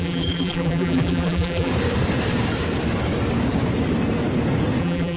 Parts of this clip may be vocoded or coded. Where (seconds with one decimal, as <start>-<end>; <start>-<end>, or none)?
0.0-1.7; 4.8-5.2